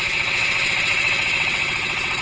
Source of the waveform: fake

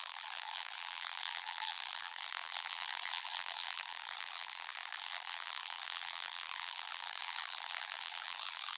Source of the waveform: fake